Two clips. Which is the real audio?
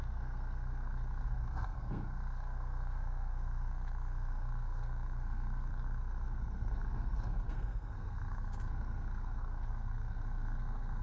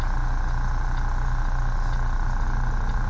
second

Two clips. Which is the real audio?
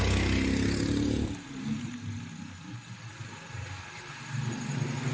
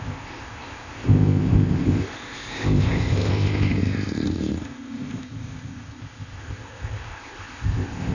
first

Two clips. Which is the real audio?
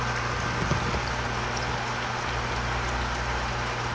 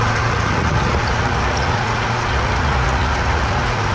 first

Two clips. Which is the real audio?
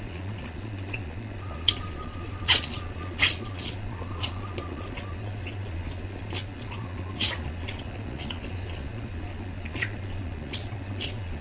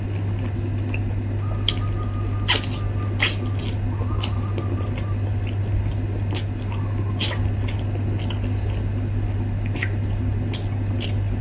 second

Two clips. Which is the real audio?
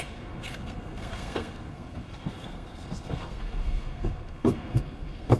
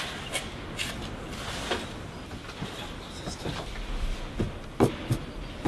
second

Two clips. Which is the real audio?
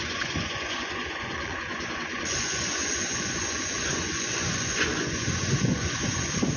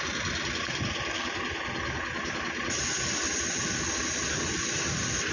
second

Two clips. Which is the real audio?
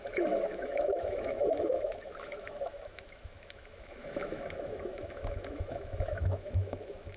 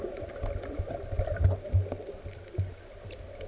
second